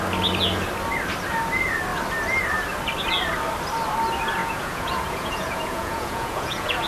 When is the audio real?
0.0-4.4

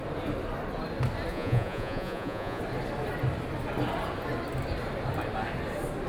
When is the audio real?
0.0-1.3; 2.6-6.1